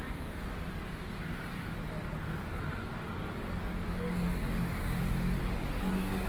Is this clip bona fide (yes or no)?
no